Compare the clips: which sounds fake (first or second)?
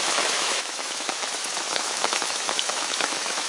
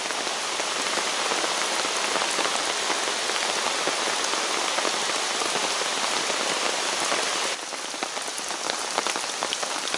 first